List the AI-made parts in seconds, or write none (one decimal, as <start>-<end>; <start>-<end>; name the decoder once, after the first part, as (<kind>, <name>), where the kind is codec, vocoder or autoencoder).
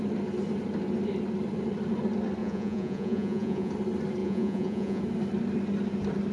2.4-3.7 (vocoder, Vocos); 4.2-5.0